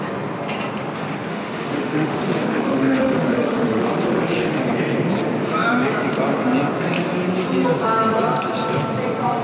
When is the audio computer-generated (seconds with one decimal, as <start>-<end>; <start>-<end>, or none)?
1.3-4.6